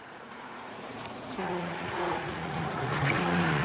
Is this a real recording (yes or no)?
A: no